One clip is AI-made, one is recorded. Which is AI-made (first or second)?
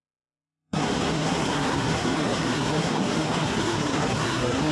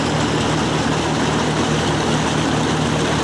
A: first